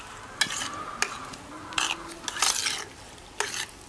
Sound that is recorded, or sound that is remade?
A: recorded